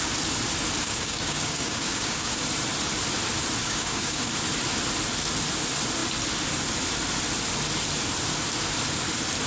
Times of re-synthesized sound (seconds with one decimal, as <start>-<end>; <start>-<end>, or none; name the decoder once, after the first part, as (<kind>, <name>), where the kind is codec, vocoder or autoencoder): 0.8-2.4 (codec, DAC); 3.6-4.3